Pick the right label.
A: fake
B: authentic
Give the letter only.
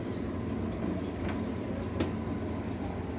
B